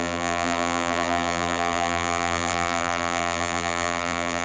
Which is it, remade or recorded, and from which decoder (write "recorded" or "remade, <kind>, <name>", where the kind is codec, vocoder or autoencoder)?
remade, vocoder, BigVGAN v2